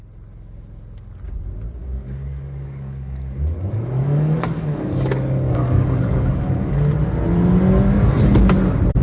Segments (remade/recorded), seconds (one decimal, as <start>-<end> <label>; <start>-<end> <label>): 0.0-1.8 recorded; 1.8-6.9 remade; 6.9-9.0 recorded